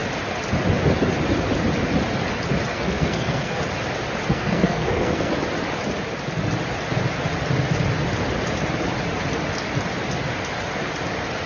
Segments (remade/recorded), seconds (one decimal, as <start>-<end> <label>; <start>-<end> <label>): 0.0-2.7 recorded; 2.7-3.6 remade; 3.6-4.3 recorded; 4.3-5.3 remade; 5.3-11.5 recorded